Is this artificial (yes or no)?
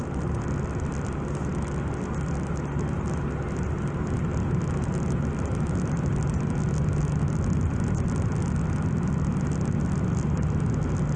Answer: no